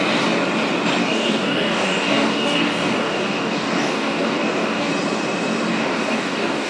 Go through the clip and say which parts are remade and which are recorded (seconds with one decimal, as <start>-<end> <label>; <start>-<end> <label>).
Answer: 0.0-1.0 recorded; 1.0-4.9 remade; 4.9-5.7 recorded; 5.7-6.7 remade